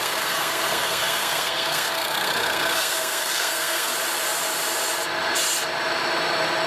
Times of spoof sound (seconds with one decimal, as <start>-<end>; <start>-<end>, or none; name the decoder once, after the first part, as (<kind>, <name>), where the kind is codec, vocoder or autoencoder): 0.0-3.9 (codec, SNAC)